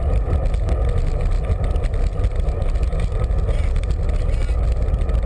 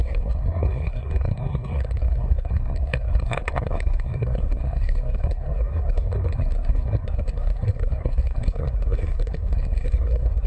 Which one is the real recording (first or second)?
first